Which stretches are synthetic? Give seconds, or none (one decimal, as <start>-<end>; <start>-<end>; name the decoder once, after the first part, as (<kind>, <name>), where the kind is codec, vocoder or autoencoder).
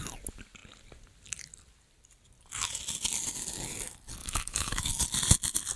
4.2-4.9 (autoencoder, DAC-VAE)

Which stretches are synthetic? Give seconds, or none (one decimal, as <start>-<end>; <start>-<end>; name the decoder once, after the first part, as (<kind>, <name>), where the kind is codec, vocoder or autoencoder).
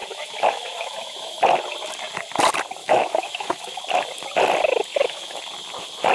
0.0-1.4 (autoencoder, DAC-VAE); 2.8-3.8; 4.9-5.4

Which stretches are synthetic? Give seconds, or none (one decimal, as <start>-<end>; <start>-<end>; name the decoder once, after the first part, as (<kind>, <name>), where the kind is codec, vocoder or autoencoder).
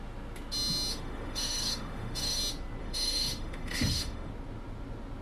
0.9-2.4 (autoencoder, DAC-VAE); 2.8-4.3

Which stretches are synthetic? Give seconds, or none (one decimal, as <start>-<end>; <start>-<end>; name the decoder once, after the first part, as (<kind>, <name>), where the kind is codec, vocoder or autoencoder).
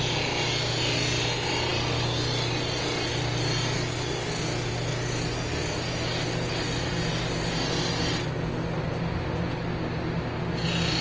none